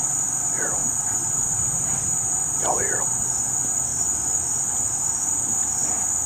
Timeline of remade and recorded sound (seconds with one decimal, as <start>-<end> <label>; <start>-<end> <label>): 0.0-3.9 remade; 3.9-4.4 recorded; 4.4-6.3 remade